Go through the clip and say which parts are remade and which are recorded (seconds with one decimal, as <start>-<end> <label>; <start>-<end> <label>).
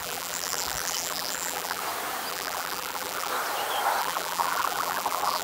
0.0-1.8 remade; 1.8-2.3 recorded; 2.3-3.3 remade; 3.3-4.0 recorded; 4.0-5.4 remade